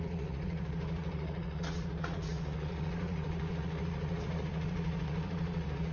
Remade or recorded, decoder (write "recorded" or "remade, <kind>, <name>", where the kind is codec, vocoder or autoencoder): remade, vocoder, Vocos